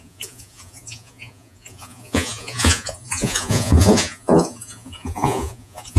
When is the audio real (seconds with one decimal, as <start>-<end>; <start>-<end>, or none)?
none